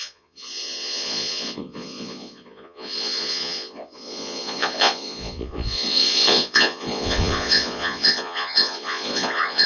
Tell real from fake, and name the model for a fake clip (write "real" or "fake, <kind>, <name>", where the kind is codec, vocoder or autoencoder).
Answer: fake, vocoder, Vocos